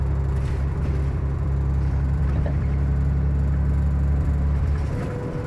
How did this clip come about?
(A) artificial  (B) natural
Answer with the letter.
A